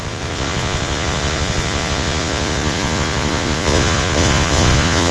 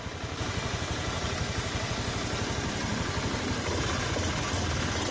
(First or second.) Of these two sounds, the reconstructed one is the first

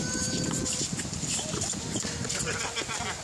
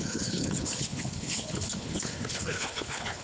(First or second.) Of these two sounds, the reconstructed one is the second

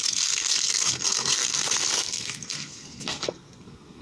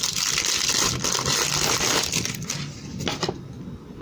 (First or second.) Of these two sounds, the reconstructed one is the first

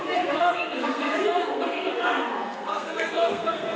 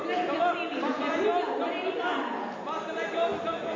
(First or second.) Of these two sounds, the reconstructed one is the first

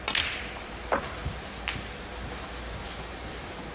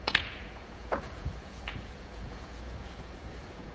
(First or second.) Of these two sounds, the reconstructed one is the second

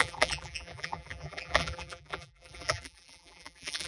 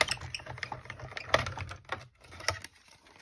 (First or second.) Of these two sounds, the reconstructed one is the first